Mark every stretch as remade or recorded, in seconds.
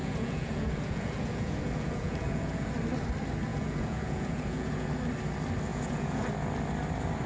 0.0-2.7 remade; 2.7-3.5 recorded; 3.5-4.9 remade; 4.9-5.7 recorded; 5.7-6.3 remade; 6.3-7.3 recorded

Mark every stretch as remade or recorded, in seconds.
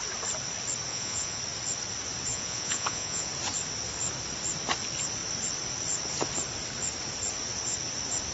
0.0-0.9 recorded; 0.9-1.4 remade; 1.4-2.3 recorded; 2.3-3.3 remade; 3.3-8.3 recorded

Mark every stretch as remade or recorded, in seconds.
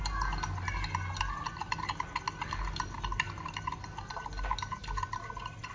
0.0-5.7 recorded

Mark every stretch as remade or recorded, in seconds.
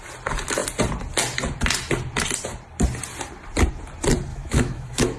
0.0-4.3 recorded; 4.3-5.2 remade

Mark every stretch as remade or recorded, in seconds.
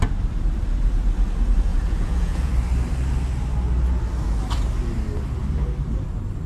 0.0-1.7 recorded; 1.7-2.5 remade; 2.5-6.5 recorded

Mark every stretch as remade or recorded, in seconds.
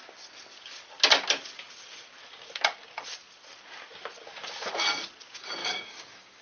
0.0-5.6 recorded; 5.6-6.4 remade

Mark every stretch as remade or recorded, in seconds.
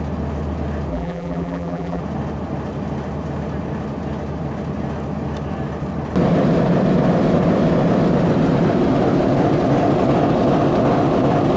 0.0-0.9 recorded; 0.9-2.0 remade; 2.0-11.6 recorded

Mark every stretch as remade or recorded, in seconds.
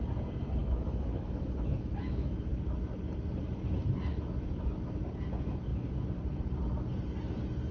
0.0-0.6 recorded; 0.6-3.0 remade; 3.0-4.1 recorded; 4.1-5.0 remade; 5.0-7.7 recorded